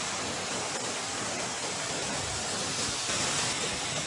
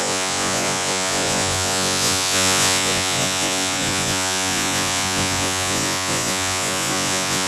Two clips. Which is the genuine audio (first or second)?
first